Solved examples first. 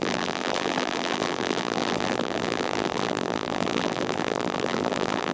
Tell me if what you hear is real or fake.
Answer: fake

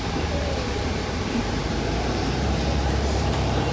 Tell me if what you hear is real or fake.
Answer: fake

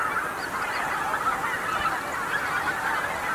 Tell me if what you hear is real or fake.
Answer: real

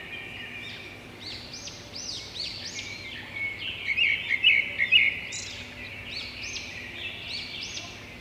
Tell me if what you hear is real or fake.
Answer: real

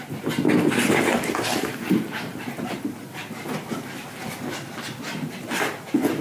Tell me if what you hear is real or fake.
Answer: real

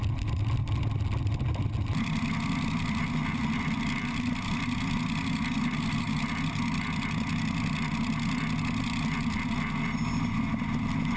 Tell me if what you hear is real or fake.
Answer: real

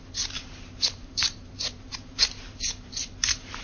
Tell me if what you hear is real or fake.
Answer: fake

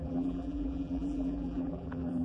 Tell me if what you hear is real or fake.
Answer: fake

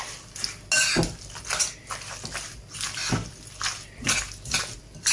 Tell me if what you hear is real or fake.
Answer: real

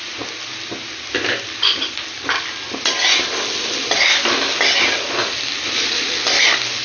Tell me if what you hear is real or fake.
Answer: real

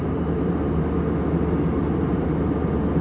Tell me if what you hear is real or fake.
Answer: real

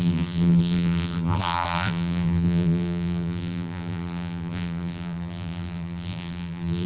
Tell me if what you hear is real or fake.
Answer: fake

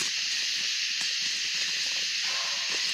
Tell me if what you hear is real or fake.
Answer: real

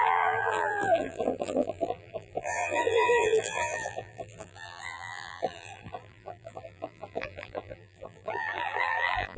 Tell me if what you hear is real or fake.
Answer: fake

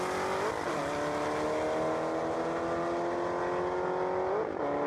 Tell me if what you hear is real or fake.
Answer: real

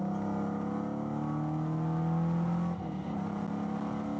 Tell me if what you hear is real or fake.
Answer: real